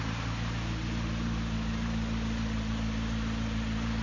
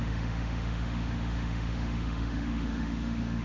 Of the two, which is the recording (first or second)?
first